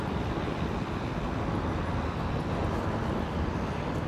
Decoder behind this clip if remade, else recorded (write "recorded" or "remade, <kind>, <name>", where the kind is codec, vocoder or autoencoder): recorded